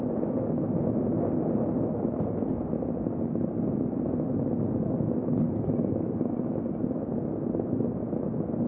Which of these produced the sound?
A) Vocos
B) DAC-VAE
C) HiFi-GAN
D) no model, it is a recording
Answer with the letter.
D